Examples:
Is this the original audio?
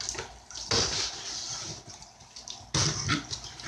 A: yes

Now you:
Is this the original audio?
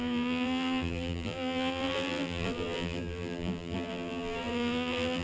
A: no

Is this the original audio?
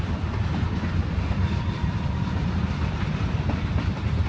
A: yes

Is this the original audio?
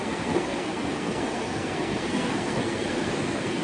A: no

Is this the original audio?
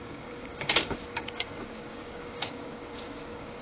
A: no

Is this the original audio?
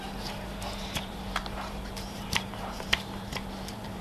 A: no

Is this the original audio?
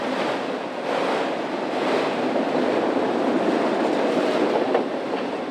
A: yes